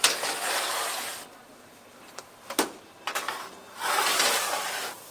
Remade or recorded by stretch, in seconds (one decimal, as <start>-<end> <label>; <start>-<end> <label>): 0.0-1.5 recorded; 1.5-2.3 remade; 2.3-5.1 recorded